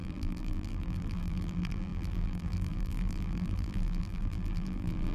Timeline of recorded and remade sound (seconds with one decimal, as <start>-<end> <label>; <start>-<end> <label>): 0.0-5.1 remade

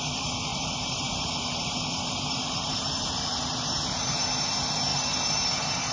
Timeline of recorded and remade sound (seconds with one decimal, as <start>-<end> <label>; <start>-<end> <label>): 0.0-0.5 recorded; 0.5-3.7 remade; 3.7-5.9 recorded

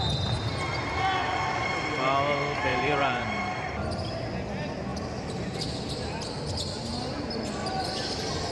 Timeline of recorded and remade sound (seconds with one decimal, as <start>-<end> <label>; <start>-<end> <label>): 0.0-2.7 recorded; 2.7-4.1 remade; 4.1-4.9 recorded; 4.9-6.4 remade; 6.4-8.5 recorded